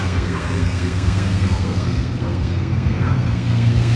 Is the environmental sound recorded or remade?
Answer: remade